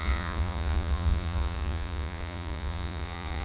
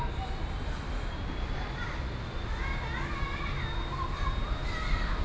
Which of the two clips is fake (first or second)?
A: first